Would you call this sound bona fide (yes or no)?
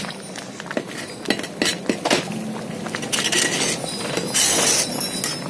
yes